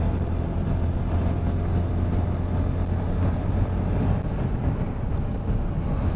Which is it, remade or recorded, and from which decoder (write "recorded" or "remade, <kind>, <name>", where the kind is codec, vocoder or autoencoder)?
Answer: recorded